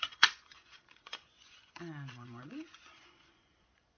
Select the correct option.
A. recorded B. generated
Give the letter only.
B